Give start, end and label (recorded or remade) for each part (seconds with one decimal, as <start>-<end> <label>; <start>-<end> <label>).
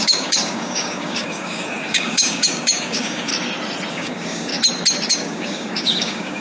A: 0.0-3.3 remade; 3.3-3.9 recorded; 3.9-4.5 remade; 4.5-5.1 recorded; 5.1-6.4 remade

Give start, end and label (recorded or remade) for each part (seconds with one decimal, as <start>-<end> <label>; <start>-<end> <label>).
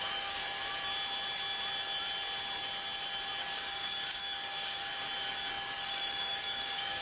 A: 0.0-0.4 remade; 0.4-3.4 recorded; 3.4-4.9 remade; 4.9-5.5 recorded; 5.5-7.0 remade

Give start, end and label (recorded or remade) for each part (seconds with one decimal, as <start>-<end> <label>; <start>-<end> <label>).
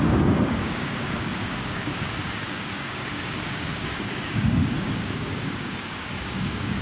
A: 0.0-6.8 remade